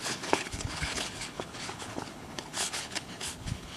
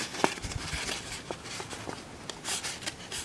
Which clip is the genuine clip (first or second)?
second